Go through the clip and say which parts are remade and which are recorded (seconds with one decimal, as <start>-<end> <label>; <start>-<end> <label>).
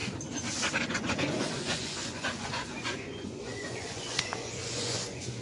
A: 0.0-0.8 recorded; 0.8-5.4 remade